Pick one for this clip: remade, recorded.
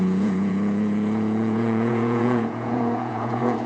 remade